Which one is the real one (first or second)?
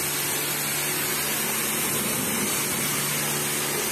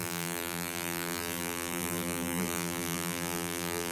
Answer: first